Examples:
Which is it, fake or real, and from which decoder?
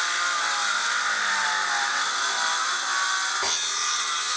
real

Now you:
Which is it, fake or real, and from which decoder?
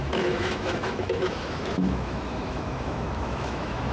fake, autoencoder, DAC-VAE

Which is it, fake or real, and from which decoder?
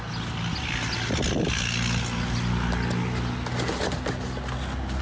real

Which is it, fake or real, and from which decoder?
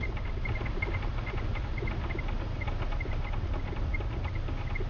real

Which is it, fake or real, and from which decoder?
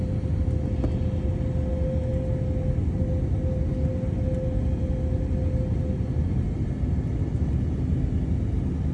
real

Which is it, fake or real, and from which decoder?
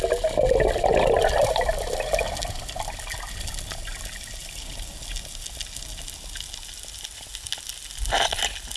real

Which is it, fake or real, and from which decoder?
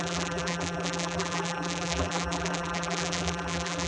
fake, vocoder, BigVGAN v2